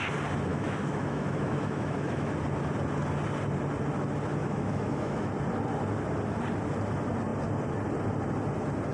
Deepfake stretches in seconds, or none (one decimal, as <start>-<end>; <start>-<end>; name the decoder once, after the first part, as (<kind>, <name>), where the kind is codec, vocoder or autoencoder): 0.5-2.3 (autoencoder, DAC-VAE); 4.4-5.3

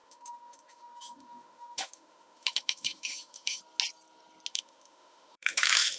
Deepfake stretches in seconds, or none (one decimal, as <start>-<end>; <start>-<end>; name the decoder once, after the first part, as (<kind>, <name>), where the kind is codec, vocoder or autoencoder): 0.0-3.6 (autoencoder, DAC-VAE); 4.5-6.0